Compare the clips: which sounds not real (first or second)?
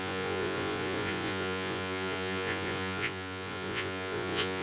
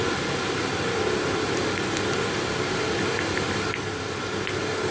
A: first